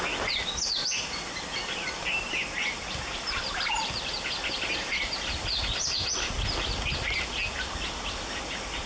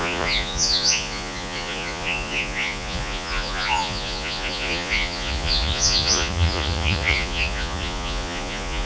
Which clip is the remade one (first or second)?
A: second